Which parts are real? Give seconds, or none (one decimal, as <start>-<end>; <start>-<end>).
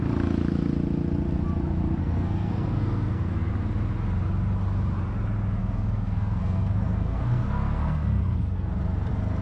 0.0-2.0; 3.5-5.6; 8.7-9.4